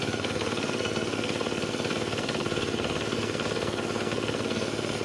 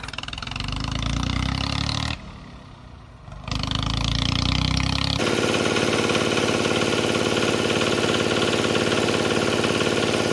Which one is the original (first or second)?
second